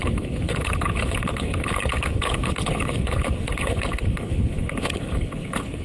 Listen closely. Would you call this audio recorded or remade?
remade